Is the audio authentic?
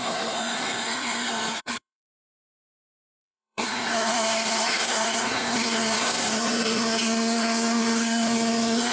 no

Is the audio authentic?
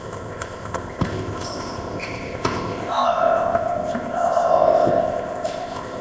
no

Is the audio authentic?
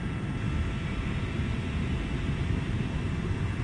yes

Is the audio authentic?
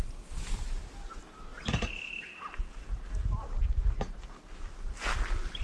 yes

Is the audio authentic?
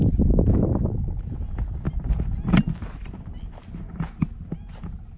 yes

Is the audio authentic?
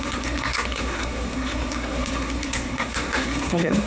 no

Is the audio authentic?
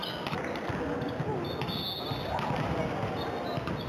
yes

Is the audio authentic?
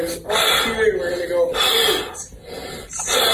yes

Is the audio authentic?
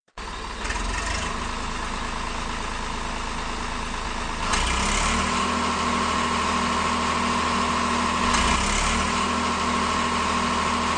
yes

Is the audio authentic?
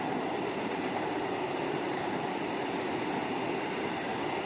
yes